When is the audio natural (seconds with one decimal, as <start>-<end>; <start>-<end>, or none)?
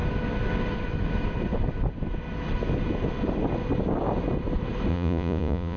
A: 0.0-4.9